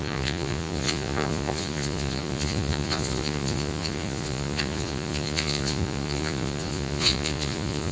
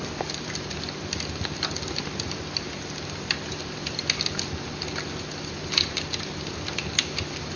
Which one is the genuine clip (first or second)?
second